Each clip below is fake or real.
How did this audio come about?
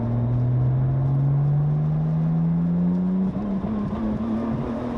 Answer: real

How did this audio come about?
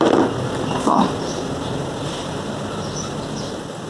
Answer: real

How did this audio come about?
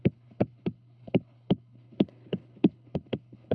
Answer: fake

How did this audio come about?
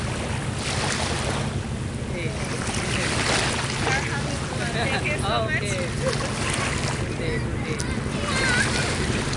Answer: real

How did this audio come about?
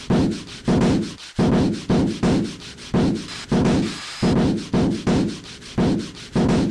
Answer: real